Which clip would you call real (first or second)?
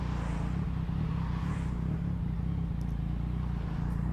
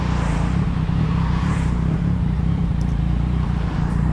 first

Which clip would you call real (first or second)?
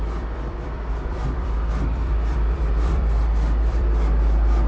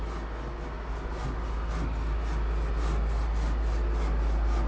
second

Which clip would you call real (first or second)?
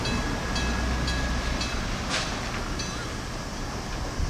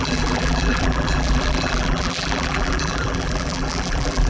first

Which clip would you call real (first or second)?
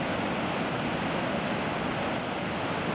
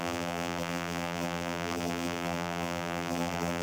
first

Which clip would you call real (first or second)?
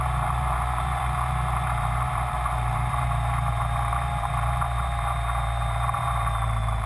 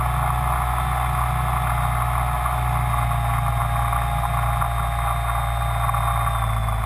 second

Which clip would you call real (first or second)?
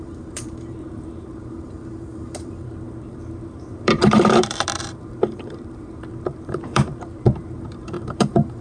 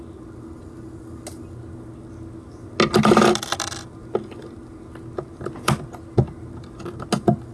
second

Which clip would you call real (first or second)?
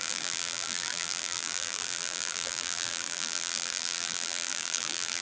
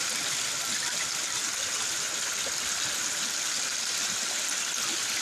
second